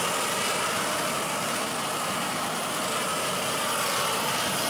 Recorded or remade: remade